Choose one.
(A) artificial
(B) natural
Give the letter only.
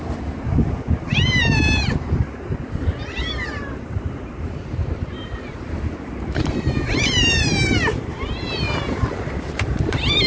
A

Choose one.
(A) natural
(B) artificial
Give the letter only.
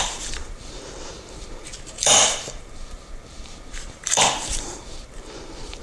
B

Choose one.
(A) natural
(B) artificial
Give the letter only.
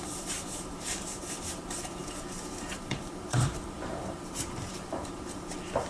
B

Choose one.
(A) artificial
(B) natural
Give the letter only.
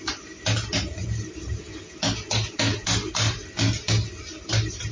B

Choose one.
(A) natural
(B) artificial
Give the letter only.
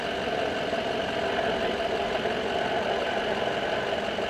A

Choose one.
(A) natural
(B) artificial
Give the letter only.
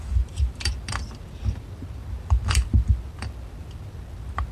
B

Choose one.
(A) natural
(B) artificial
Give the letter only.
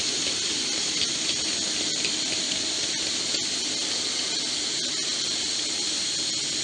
A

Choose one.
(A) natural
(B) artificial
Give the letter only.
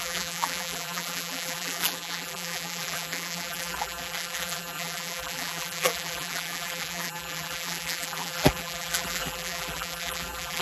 B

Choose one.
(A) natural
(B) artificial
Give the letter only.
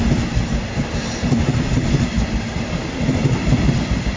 A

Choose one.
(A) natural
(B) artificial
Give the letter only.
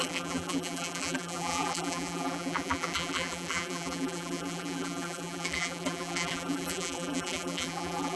B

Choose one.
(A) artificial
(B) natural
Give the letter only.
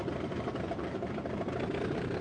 A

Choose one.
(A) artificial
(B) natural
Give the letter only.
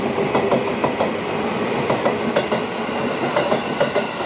B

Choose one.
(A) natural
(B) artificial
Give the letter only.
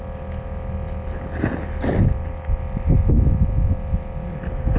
A